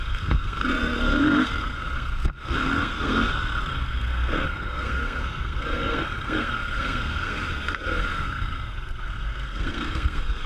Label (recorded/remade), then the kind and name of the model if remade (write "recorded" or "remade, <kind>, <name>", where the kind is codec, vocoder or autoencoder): remade, codec, SNAC